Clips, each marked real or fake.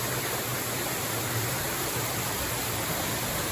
real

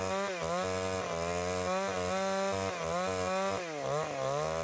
real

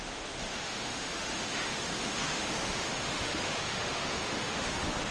fake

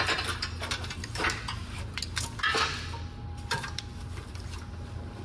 real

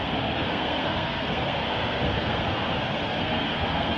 fake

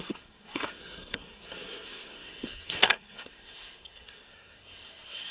fake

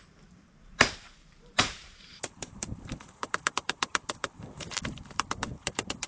fake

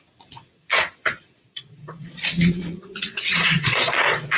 fake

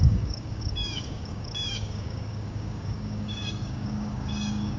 fake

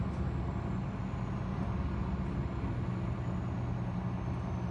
real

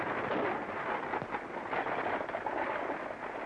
real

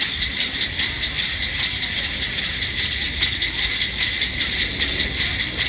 real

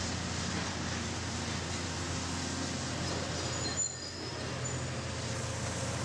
real